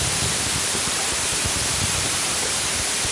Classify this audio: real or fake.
real